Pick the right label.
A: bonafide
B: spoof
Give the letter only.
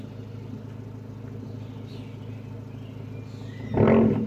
A